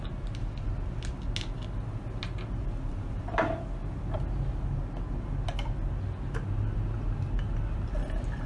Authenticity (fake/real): real